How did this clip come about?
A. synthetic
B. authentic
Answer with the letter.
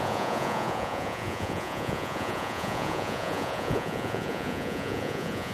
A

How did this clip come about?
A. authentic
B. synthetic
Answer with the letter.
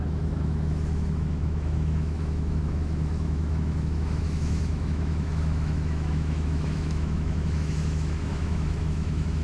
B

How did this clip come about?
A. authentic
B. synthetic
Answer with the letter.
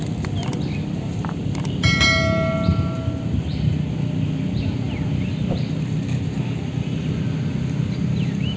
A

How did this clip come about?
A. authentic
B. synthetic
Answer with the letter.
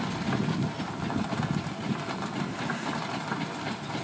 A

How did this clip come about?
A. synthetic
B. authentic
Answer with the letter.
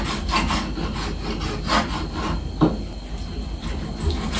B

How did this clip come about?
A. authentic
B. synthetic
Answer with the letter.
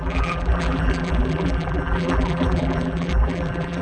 B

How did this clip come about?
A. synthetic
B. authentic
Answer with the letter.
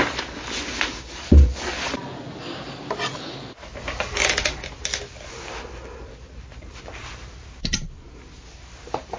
B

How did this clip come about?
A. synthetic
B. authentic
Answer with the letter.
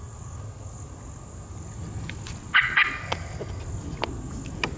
B